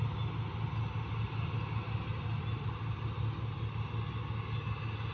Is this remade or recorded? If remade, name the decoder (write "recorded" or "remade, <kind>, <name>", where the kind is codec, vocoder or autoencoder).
recorded